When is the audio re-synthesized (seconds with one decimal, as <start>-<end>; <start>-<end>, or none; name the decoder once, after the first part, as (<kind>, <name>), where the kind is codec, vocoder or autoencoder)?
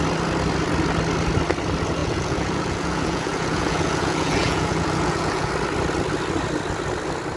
2.0-5.5 (vocoder, Vocos)